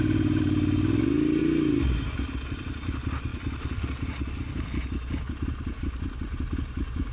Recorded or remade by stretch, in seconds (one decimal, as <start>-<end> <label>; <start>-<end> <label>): 0.0-7.1 recorded